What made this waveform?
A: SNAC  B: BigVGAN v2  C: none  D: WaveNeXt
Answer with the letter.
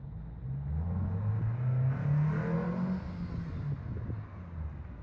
C